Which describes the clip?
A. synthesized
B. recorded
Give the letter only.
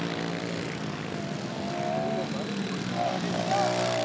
B